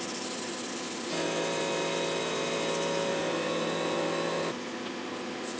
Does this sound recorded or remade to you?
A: recorded